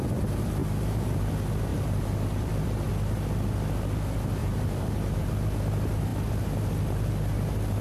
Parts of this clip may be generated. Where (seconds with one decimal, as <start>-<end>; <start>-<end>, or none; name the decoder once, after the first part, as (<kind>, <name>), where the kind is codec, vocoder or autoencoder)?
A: 0.6-1.2 (vocoder, BigVGAN v2); 1.7-2.9; 4.4-5.3